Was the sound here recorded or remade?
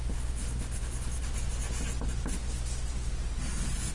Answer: recorded